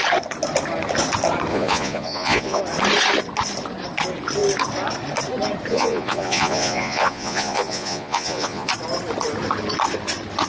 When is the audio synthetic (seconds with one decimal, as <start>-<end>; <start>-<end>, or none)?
1.5-2.6; 5.7-8.7